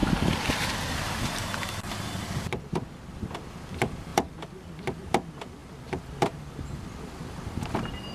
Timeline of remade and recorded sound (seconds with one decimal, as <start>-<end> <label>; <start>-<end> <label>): 0.0-8.1 recorded